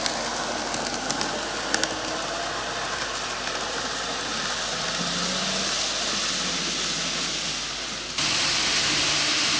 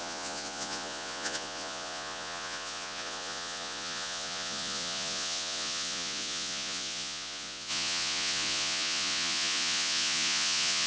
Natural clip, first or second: first